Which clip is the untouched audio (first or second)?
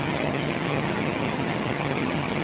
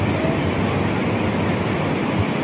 second